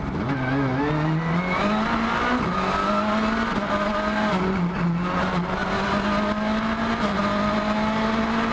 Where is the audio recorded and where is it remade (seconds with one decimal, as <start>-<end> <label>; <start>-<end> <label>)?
0.0-8.5 recorded

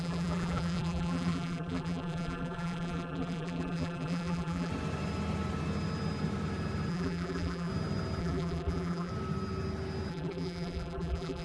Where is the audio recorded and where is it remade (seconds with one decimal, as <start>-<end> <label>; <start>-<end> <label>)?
0.0-4.7 remade; 4.7-6.9 recorded; 6.9-7.7 remade; 7.7-8.2 recorded; 8.2-9.1 remade; 9.1-10.1 recorded; 10.1-11.4 remade

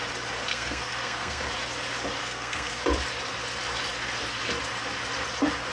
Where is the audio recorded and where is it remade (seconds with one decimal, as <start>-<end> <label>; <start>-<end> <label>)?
0.0-0.5 recorded; 0.5-1.4 remade; 1.4-2.2 recorded; 2.2-2.8 remade; 2.8-5.7 recorded